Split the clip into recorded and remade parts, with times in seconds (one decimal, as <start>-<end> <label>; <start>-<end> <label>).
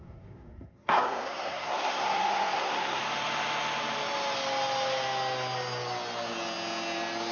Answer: 0.0-3.0 remade; 3.0-7.3 recorded